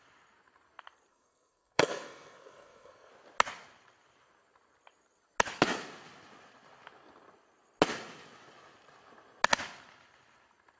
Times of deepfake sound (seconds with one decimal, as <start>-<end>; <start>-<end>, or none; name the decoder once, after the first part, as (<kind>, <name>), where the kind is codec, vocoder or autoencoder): 1.1-3.1 (codec, SNAC)

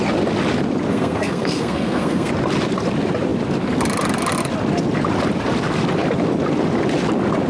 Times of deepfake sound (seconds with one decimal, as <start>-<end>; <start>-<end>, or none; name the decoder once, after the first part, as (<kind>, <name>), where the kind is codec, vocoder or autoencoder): 0.9-2.3 (codec, SNAC)

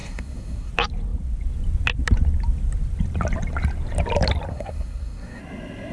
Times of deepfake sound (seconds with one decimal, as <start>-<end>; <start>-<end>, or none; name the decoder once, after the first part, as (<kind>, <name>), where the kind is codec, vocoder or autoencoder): 0.0-0.7 (codec, SNAC); 4.5-5.4